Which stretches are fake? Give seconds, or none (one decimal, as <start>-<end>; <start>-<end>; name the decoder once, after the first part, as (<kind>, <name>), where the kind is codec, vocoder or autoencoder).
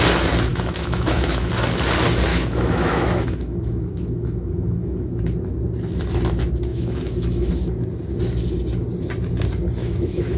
0.5-1.5 (autoencoder, DAC-VAE); 2.3-5.2; 6.7-7.5; 9.8-10.4